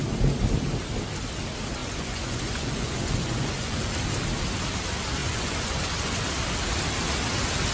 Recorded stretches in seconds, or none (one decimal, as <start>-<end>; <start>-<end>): 0.0-1.8; 3.9-5.2; 6.2-7.7